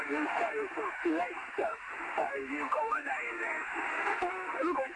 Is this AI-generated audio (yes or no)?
yes